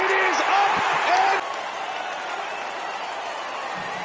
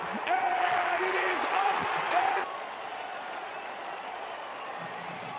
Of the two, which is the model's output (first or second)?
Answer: second